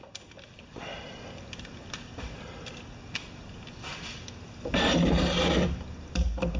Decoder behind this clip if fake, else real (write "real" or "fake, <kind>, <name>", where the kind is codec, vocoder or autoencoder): real